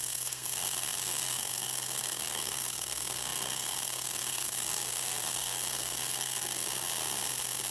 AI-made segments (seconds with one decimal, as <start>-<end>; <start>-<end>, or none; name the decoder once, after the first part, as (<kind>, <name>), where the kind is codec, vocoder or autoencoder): 0.0-6.7 (codec, SNAC)